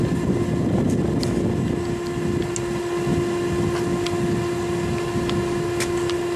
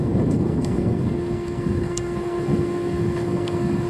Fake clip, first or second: second